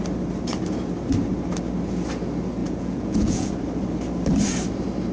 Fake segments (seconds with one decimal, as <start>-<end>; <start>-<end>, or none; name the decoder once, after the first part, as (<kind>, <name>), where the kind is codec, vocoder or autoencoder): 2.6-3.5 (vocoder, Vocos)